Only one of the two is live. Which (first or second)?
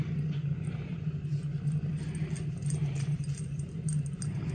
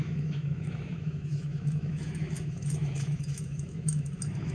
first